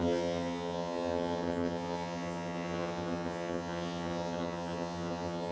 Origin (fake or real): fake